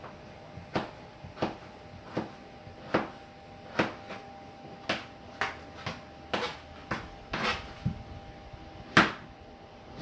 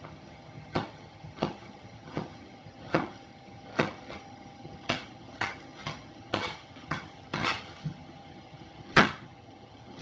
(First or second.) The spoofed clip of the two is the second